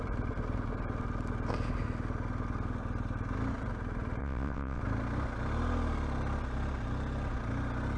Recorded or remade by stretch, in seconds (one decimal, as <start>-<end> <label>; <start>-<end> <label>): 0.0-4.2 recorded; 4.2-4.8 remade; 4.8-8.0 recorded